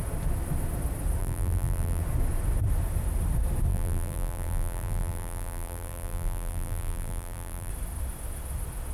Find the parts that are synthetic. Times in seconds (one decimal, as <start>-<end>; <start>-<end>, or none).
1.2-2.0; 3.7-7.7